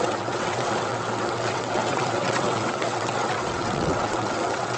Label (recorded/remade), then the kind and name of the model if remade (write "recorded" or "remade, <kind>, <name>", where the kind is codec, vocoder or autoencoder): remade, vocoder, WaveNeXt